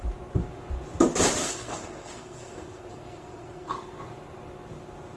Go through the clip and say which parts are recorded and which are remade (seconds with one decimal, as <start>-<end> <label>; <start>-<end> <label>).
0.0-1.4 recorded; 1.4-4.0 remade; 4.0-5.2 recorded